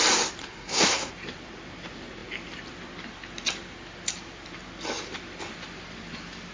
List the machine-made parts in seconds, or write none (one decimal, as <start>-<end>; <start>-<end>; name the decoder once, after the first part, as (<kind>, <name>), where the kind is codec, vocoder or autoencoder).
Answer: 0.4-1.1 (codec, SNAC)